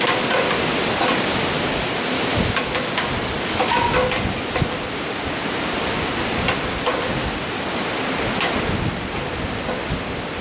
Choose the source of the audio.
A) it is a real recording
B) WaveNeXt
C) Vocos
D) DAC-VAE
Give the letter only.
A